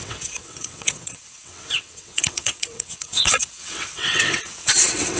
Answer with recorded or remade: remade